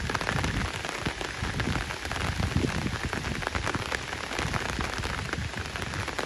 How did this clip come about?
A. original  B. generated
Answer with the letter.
A